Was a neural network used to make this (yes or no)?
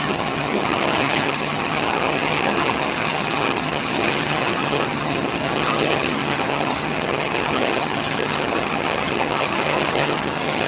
yes